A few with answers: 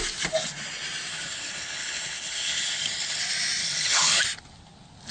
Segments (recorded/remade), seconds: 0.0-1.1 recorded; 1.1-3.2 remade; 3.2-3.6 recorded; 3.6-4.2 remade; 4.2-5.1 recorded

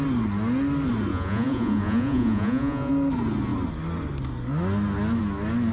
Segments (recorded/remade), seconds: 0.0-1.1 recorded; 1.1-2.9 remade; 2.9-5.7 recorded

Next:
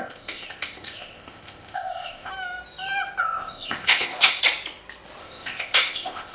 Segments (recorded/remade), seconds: 0.0-2.3 remade; 2.3-3.2 recorded; 3.2-4.4 remade; 4.4-5.2 recorded; 5.2-6.3 remade

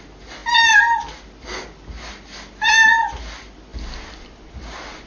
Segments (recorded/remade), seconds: 0.0-5.1 recorded